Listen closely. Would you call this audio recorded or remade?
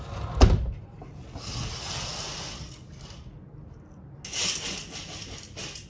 recorded